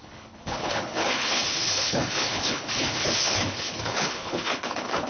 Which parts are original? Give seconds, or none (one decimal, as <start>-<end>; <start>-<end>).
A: none